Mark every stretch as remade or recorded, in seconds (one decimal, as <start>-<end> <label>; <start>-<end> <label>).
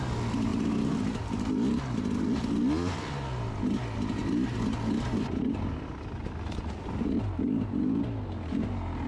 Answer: 0.0-9.1 recorded